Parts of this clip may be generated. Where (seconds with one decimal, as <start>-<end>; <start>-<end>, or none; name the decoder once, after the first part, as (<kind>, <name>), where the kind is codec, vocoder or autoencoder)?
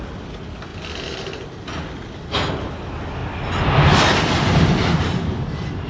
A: none